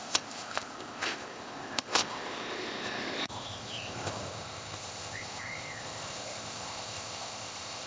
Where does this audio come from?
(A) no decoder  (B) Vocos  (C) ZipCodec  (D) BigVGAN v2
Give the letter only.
C